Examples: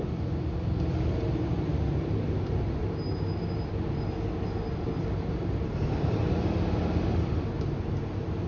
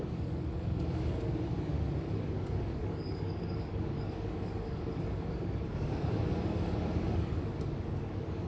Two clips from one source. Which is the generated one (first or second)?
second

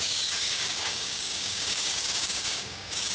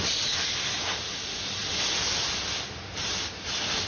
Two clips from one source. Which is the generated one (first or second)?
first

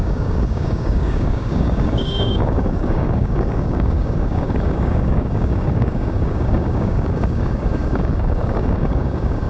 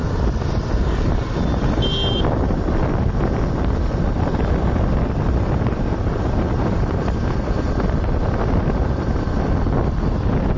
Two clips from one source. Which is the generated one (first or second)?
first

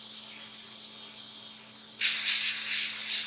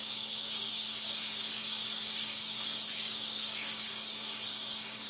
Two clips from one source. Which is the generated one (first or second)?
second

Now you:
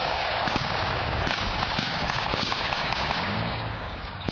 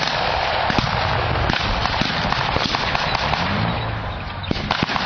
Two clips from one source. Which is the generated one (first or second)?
first